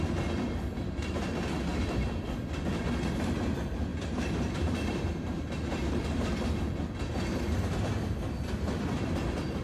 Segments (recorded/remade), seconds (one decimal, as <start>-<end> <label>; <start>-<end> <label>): 0.0-1.7 recorded; 1.7-2.5 remade; 2.5-3.9 recorded; 3.9-6.8 remade; 6.8-9.6 recorded